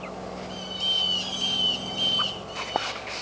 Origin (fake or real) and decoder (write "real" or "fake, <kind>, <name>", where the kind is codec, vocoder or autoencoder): real